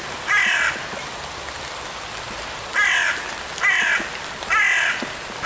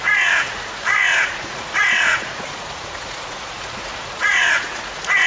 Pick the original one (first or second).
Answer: first